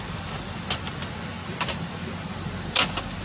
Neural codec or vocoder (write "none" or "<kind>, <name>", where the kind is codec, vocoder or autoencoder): none